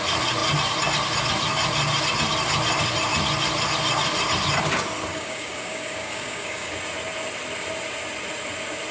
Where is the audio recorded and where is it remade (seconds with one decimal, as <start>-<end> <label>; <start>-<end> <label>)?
0.0-5.1 recorded; 5.1-6.7 remade; 6.7-8.9 recorded